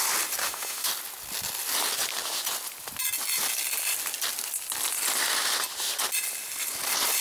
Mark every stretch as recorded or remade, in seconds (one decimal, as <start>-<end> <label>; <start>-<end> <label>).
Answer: 0.0-0.4 recorded; 0.4-0.9 remade; 0.9-7.2 recorded